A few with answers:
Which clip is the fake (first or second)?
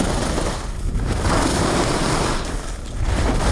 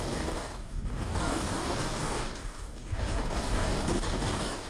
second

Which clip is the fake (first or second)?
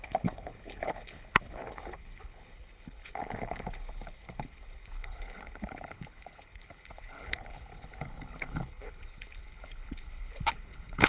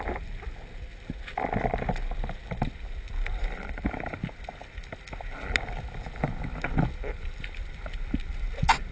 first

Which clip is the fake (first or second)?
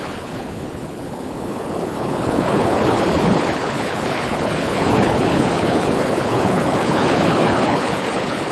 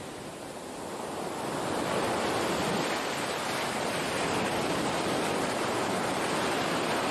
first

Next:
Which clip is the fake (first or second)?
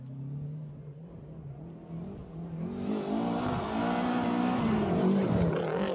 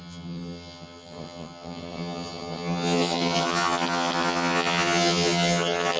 second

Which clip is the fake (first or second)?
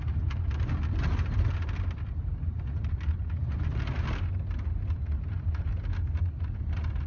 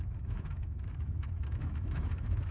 second